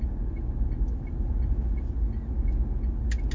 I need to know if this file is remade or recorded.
recorded